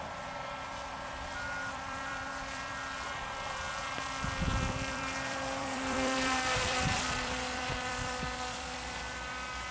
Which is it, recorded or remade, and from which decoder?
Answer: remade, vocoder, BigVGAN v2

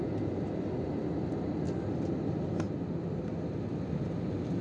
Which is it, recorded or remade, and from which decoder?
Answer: recorded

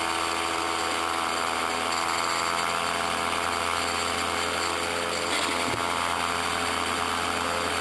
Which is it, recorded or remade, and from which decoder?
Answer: recorded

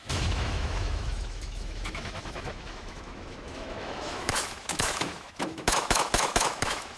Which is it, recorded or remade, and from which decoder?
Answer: remade, autoencoder, DAC-VAE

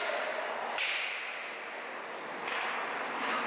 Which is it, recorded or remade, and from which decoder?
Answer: recorded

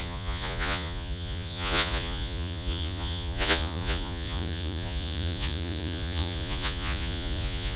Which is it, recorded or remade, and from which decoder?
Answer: remade, vocoder, Vocos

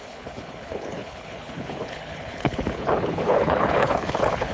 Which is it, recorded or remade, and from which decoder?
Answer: remade, codec, HILCodec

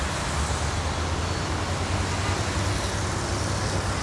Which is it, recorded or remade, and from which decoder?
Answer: recorded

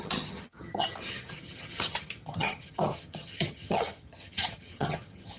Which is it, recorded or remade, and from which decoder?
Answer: remade, vocoder, HiFi-GAN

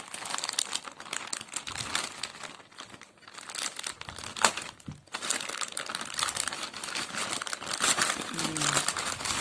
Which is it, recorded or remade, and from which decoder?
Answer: recorded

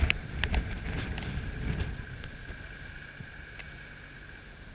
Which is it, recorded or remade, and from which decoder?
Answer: recorded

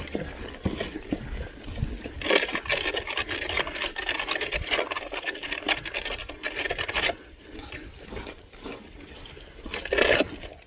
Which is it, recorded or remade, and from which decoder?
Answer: recorded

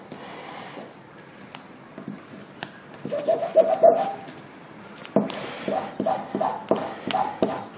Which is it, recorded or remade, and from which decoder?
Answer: recorded